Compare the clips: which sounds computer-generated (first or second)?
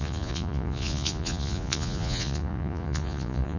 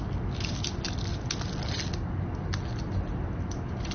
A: first